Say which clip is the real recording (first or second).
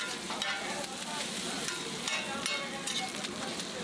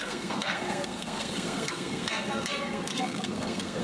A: first